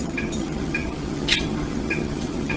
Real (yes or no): no